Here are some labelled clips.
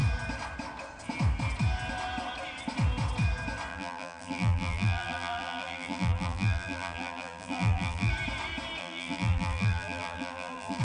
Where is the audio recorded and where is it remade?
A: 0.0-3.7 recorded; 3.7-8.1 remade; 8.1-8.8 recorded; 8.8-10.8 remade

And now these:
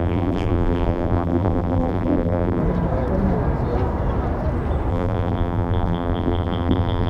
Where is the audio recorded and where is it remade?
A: 0.0-2.6 remade; 2.6-4.9 recorded; 4.9-7.1 remade